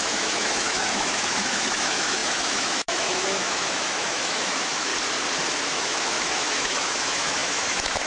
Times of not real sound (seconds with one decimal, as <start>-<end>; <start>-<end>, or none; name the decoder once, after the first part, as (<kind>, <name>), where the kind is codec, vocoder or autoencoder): 0.0-4.9 (autoencoder, DAC-VAE); 5.7-8.1